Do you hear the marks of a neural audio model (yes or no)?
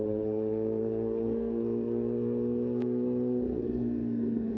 yes